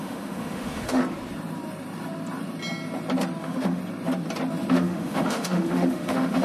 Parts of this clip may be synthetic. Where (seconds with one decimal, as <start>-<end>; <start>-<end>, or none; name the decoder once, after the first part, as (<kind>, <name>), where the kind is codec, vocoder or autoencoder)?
0.0-1.0 (autoencoder, DAC-VAE); 3.4-3.8; 4.7-6.4

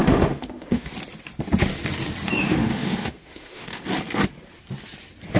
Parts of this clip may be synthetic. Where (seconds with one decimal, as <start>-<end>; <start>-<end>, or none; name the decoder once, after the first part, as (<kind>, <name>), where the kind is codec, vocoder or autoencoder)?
0.0-0.9 (autoencoder, DAC-VAE); 2.4-3.8